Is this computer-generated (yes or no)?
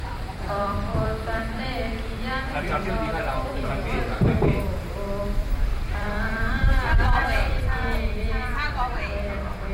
yes